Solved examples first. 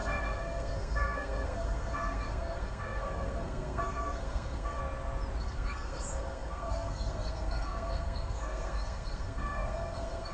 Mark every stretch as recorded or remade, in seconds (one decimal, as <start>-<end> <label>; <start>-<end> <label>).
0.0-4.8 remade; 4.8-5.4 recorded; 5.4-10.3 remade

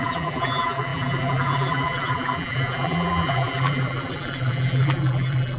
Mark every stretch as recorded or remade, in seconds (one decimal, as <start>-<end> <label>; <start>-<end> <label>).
0.0-5.6 remade

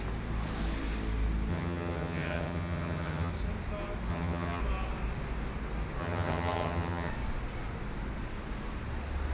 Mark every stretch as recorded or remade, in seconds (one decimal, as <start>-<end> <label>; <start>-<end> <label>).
0.0-1.5 recorded; 1.5-3.3 remade; 3.3-4.1 recorded; 4.1-4.6 remade; 4.6-6.0 recorded; 6.0-7.1 remade; 7.1-9.3 recorded

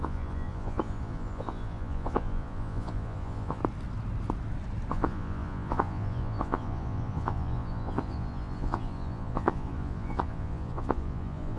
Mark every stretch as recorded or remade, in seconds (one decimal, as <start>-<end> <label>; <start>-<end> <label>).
0.0-3.6 remade; 3.6-4.9 recorded; 4.9-11.6 remade